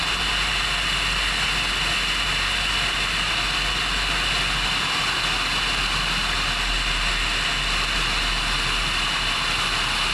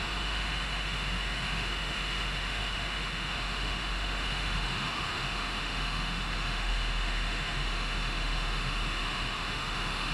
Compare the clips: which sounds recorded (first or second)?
first